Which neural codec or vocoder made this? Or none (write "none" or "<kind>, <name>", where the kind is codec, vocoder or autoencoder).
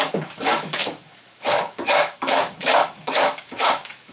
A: codec, DAC